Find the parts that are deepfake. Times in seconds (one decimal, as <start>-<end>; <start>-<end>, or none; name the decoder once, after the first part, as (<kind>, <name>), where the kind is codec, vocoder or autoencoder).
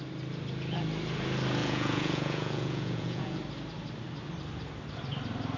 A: 1.6-3.4 (vocoder, Vocos)